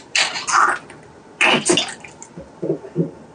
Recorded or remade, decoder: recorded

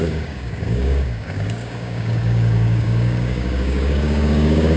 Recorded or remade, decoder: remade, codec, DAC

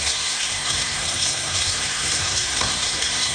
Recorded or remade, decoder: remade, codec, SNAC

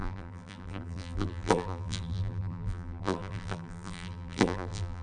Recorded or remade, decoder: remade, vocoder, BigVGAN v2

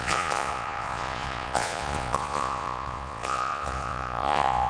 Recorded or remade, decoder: remade, vocoder, Vocos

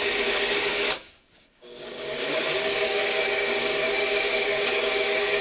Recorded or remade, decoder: remade, codec, DAC